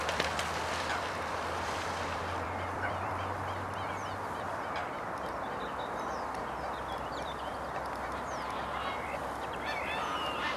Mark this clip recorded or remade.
remade